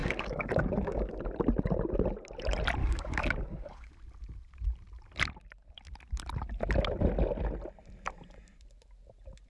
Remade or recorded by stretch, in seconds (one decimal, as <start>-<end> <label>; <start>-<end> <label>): 0.0-1.2 remade; 1.2-2.8 recorded; 2.8-3.9 remade; 3.9-9.5 recorded